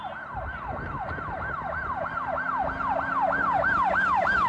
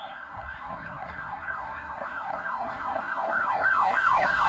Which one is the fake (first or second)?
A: second